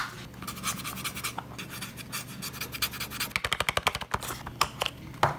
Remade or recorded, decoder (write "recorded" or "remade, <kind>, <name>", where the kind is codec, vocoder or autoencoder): recorded